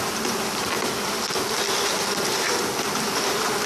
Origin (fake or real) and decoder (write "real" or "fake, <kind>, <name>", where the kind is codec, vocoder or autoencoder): real